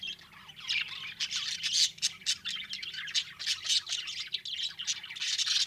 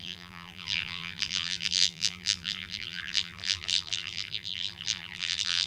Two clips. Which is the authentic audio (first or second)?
first